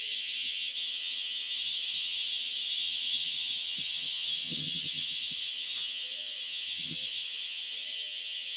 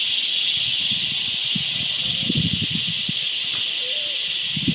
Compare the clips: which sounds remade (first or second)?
first